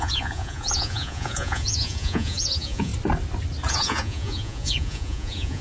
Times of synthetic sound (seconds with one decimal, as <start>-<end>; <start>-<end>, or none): 0.0-2.9; 3.7-5.6